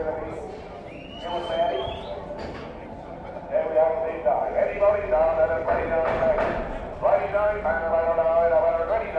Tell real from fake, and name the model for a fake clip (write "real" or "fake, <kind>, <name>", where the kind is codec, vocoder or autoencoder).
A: real